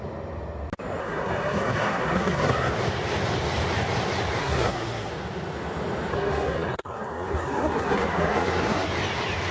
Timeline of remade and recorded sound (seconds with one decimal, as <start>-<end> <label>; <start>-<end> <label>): 0.0-1.0 recorded; 1.0-2.7 remade; 2.7-4.4 recorded; 4.4-5.1 remade; 5.1-6.1 recorded; 6.1-8.9 remade; 8.9-9.5 recorded